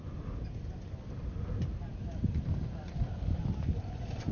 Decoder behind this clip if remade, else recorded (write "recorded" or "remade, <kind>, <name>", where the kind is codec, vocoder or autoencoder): recorded